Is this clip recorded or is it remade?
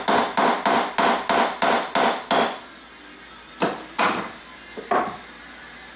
recorded